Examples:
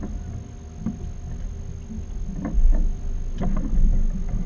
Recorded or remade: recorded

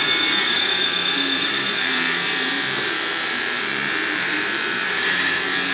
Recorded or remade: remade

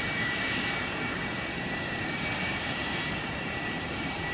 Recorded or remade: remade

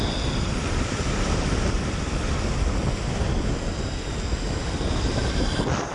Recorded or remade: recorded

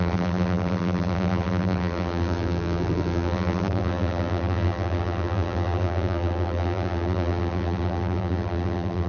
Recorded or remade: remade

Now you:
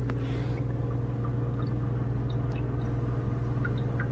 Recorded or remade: recorded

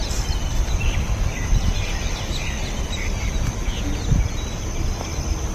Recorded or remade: recorded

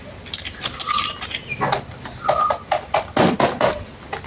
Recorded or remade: recorded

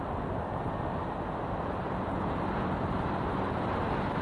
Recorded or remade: recorded